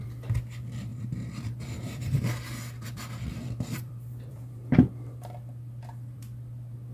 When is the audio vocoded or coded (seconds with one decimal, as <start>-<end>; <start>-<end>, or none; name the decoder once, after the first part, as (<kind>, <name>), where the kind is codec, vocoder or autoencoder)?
0.0-6.9 (vocoder, BigVGAN v2)